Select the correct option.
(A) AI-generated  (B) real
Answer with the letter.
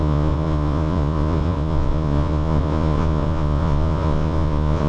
A